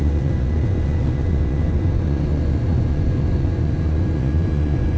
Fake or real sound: fake